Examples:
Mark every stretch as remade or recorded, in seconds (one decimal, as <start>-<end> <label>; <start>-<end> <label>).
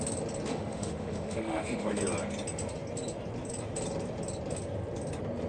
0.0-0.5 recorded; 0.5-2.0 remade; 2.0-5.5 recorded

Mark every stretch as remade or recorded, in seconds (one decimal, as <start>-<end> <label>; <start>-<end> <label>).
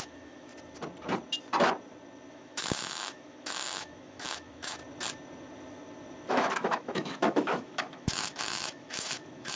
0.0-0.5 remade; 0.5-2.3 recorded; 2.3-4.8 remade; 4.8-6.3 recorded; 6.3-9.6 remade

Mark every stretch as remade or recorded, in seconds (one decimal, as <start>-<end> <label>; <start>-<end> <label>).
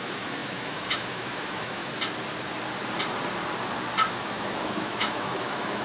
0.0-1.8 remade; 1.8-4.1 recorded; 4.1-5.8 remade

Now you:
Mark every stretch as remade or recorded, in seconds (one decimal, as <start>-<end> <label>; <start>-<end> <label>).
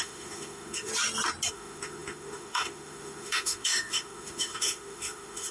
0.0-0.9 remade; 0.9-1.5 recorded; 1.5-5.5 remade